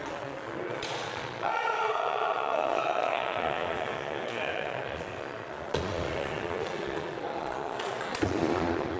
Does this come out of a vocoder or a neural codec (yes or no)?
yes